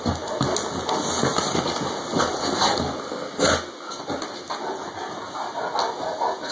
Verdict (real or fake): real